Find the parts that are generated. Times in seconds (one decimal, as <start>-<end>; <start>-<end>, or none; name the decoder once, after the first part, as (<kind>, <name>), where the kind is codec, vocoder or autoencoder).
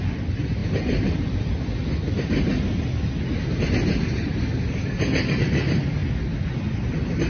none